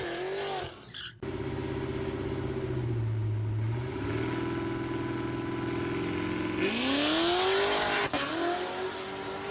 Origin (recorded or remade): recorded